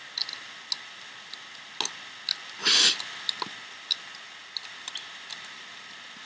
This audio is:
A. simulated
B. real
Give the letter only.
B